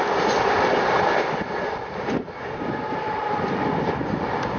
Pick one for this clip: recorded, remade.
recorded